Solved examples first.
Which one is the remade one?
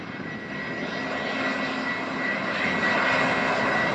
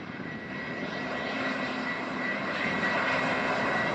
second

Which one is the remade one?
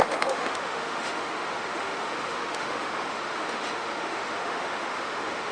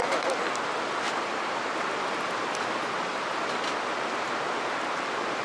first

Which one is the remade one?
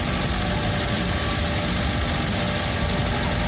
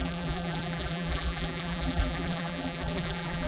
second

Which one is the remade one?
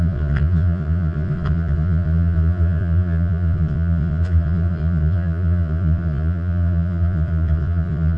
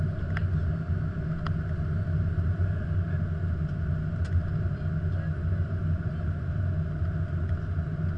first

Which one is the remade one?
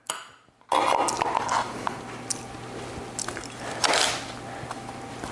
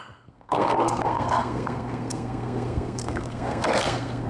second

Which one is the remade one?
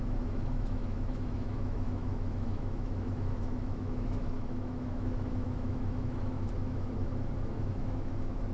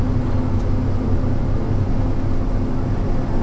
first